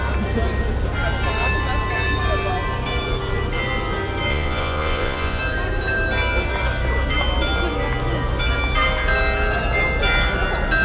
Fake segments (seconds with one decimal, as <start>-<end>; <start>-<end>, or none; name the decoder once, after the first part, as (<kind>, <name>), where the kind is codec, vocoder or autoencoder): 4.3-5.4 (vocoder, Vocos)